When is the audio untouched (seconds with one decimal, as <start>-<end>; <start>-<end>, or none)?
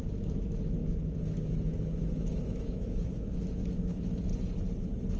4.3-5.2